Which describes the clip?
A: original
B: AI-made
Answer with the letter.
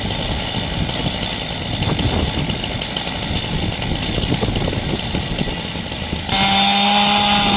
A